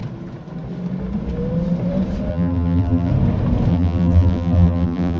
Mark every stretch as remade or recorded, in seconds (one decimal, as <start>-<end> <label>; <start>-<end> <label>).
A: 0.0-2.3 recorded; 2.3-3.1 remade; 3.1-3.7 recorded; 3.7-5.2 remade